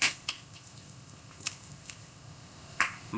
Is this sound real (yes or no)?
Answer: no